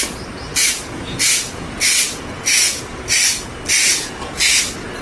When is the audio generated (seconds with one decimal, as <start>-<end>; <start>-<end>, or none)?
0.5-3.2; 3.8-4.6